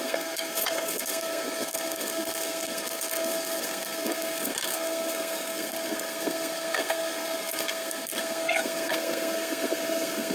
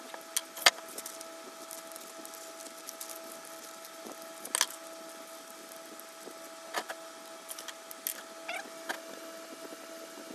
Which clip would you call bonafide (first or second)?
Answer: second